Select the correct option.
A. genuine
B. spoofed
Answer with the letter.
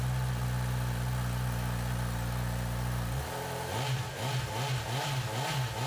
A